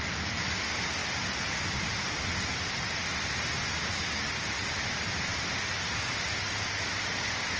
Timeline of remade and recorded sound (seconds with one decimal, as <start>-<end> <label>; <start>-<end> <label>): 0.0-7.6 recorded